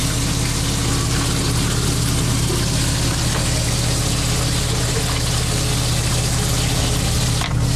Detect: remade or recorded recorded